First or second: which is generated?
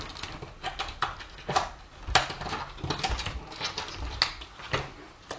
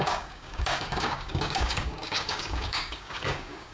second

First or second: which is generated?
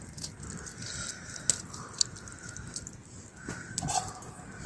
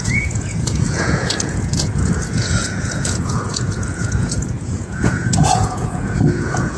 second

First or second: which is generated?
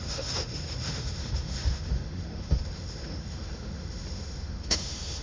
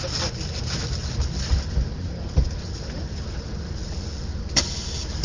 first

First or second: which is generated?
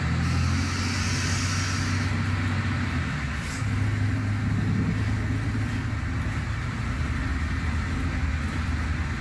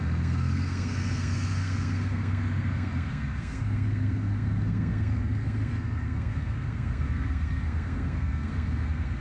second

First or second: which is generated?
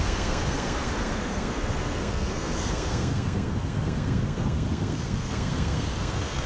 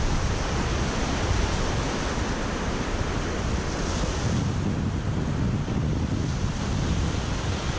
first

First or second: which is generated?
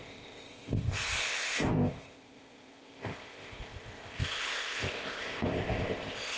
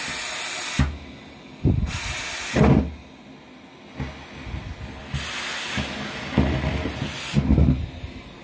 first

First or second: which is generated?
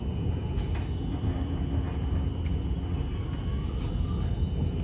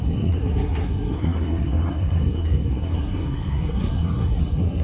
second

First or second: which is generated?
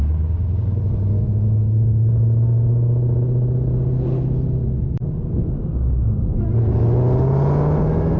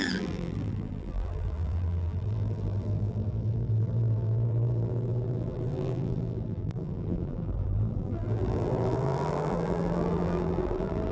second